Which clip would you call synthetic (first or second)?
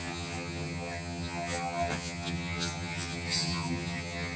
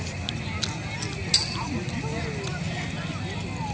first